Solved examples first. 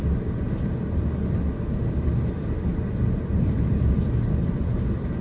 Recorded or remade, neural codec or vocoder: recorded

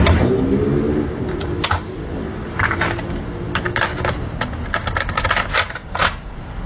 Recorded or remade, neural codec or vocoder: recorded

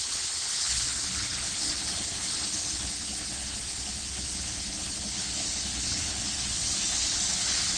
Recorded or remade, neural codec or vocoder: remade, codec, HILCodec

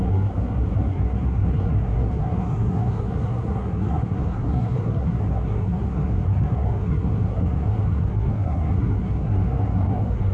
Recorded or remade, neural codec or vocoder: remade, codec, SNAC